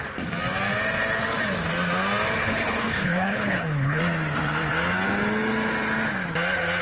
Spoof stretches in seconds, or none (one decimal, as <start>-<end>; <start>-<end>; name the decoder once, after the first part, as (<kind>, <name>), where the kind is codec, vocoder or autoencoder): 2.4-4.0 (codec, HILCodec)